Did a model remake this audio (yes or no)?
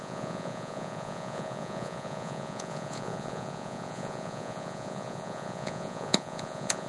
yes